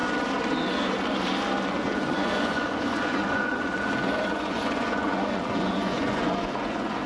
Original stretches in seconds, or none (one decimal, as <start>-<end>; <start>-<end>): 0.0-1.7